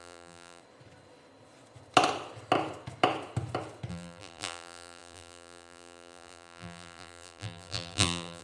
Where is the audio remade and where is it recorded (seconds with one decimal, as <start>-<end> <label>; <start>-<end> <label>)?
0.0-0.6 remade; 0.6-3.9 recorded; 3.9-8.4 remade